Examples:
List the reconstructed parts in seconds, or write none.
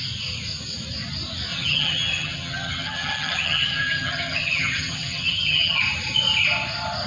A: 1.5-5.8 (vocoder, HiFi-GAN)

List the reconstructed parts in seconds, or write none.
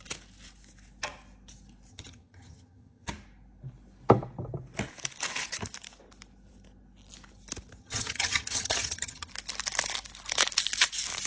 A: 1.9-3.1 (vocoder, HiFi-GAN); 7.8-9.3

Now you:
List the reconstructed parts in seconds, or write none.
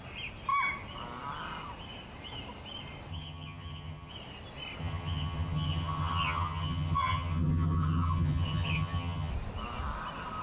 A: 3.1-4.1 (vocoder, HiFi-GAN); 4.8-9.3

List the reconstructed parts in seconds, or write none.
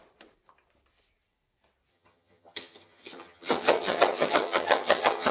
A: 1.9-5.3 (vocoder, HiFi-GAN)